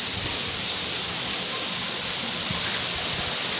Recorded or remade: recorded